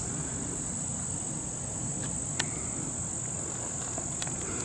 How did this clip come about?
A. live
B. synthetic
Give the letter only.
A